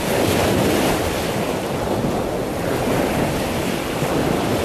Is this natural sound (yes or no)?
yes